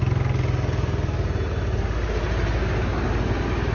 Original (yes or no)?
yes